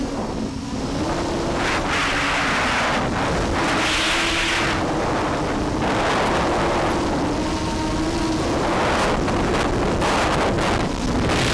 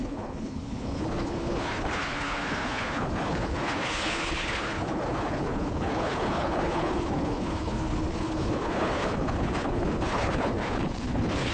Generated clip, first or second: second